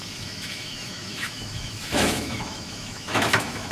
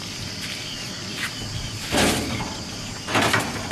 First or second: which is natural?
second